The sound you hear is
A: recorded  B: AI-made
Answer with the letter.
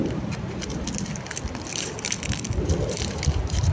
A